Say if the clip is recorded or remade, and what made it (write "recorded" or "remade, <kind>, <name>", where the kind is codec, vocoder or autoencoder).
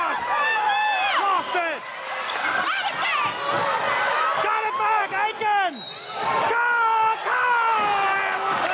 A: recorded